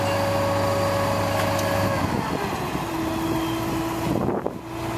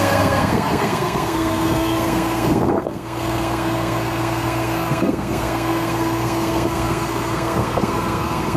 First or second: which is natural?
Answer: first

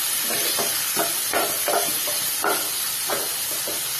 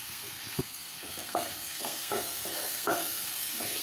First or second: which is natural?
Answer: first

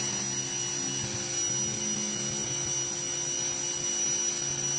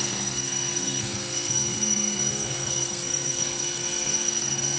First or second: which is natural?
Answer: first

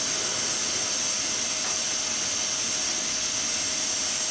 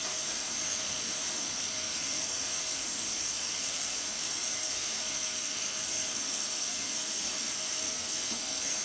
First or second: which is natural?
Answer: first